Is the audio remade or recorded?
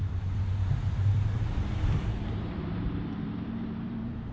remade